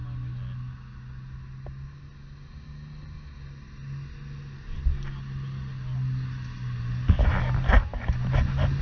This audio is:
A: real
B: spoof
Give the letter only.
A